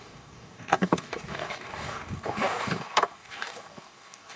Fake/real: fake